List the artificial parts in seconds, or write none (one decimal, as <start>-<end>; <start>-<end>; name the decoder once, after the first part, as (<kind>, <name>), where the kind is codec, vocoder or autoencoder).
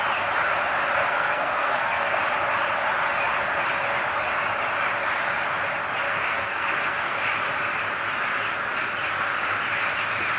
1.0-2.2 (codec, SNAC); 6.1-7.2